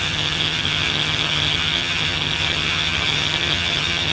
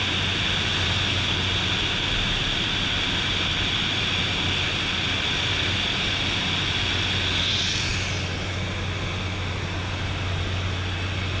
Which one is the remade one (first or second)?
first